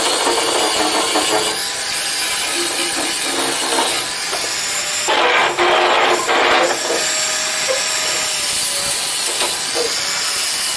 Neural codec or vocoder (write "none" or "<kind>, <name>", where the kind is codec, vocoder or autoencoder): none